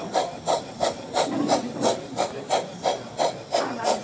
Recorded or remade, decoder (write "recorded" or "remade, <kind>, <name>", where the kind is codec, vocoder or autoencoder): recorded